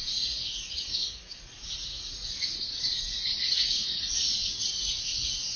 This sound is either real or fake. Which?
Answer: fake